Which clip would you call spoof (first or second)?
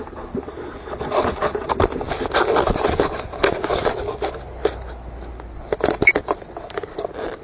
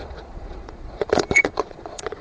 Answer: second